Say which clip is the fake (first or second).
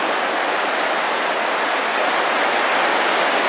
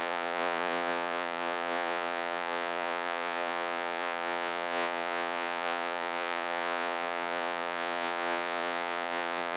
second